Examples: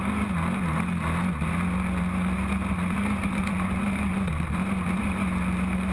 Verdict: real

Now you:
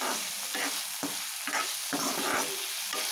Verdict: real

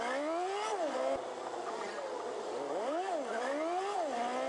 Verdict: real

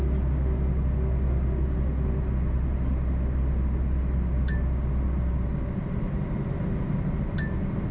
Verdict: real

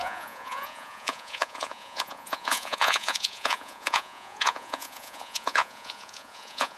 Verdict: fake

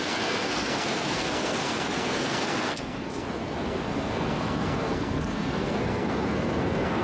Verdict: fake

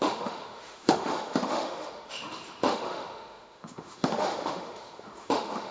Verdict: fake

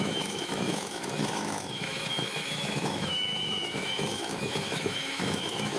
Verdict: fake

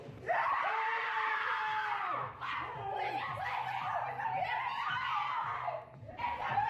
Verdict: real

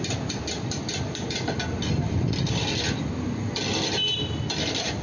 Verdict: real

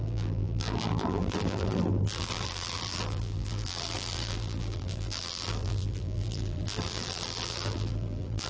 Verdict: fake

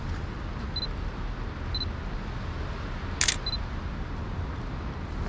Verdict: real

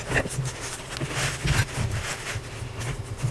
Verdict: real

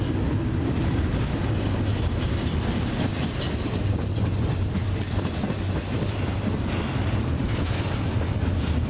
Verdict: real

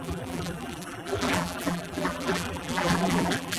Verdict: fake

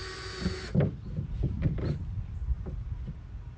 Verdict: real